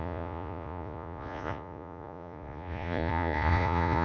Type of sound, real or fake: fake